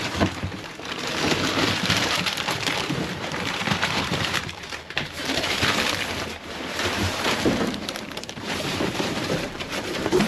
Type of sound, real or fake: fake